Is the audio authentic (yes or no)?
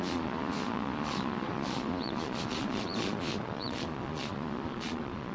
no